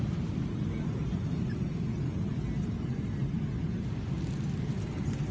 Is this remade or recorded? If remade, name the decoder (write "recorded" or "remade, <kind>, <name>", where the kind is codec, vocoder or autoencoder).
recorded